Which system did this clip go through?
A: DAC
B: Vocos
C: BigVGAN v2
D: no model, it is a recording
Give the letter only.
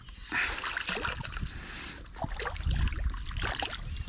D